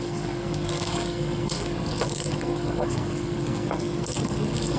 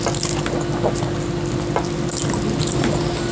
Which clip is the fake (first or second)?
first